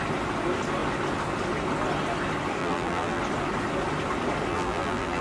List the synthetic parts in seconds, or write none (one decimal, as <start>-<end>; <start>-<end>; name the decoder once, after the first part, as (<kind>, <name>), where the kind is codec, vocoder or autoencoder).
2.6-3.2 (vocoder, BigVGAN v2); 4.5-5.2